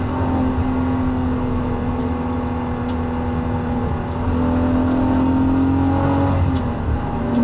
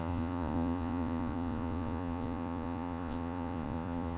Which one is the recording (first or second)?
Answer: first